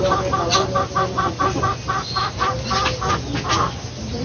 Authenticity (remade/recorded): recorded